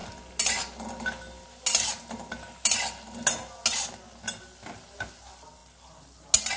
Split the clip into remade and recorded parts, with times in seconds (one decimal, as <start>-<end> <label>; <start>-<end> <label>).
0.0-6.6 recorded